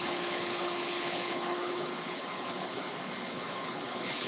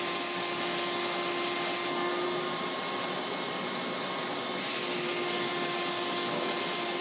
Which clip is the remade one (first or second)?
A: first